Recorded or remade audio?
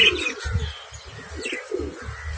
recorded